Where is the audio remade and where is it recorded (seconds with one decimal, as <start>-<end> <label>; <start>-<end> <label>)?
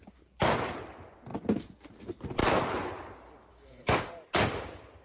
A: 0.0-3.5 recorded; 3.5-4.1 remade; 4.1-5.0 recorded